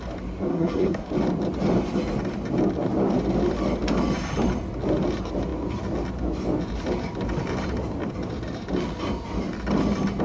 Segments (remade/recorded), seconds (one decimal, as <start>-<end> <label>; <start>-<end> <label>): 0.0-0.5 recorded; 0.5-1.1 remade; 1.1-10.2 recorded